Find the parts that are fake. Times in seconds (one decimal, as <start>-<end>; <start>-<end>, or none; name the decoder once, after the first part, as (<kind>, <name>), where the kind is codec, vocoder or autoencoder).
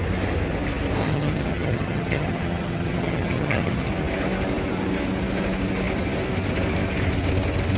1.0-3.9 (vocoder, HiFi-GAN)